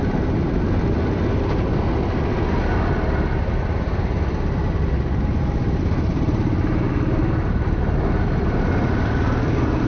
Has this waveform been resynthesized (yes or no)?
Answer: no